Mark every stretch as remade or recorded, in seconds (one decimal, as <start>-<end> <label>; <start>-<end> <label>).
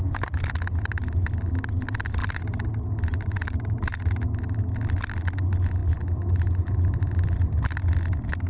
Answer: 0.0-2.2 recorded; 2.2-2.7 remade; 2.7-3.1 recorded; 3.1-3.9 remade; 3.9-8.5 recorded